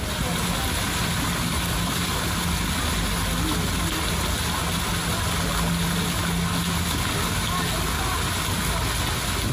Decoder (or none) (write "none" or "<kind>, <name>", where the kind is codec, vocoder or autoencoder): none